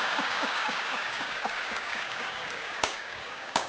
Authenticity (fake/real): fake